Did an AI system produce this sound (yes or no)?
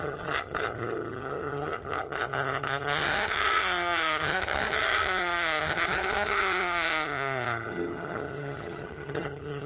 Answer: yes